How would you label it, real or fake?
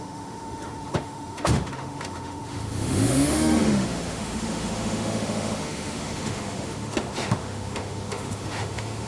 fake